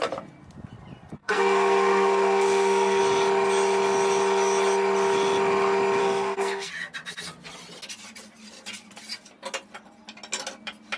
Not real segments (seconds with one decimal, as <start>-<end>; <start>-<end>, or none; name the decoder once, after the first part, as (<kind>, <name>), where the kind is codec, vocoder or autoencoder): 1.2-3.0 (codec, SNAC); 6.0-6.7

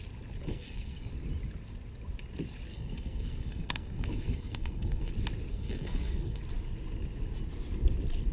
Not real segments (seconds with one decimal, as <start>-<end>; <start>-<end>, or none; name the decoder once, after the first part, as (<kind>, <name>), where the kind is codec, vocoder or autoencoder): 0.5-1.1 (codec, SNAC); 2.7-5.1; 5.5-6.4

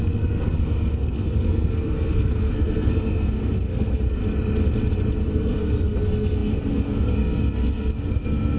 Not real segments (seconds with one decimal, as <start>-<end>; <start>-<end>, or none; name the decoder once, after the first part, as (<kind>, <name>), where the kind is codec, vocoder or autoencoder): 0.0-4.2 (codec, SNAC); 5.2-8.6

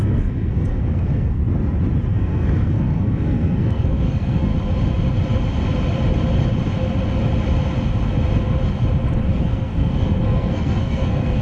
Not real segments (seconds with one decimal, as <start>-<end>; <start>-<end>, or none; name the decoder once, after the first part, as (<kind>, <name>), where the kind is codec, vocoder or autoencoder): 0.0-1.4 (codec, SNAC); 2.1-4.5; 9.3-11.4